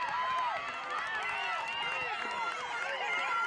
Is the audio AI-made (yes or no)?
no